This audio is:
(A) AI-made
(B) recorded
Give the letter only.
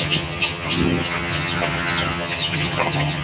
A